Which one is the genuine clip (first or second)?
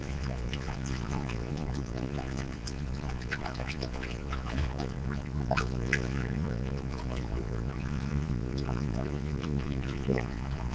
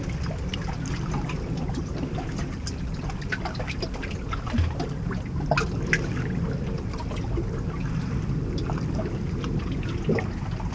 second